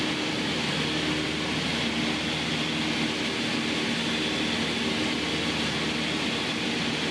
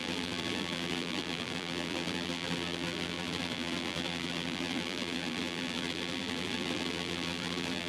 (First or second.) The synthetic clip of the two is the second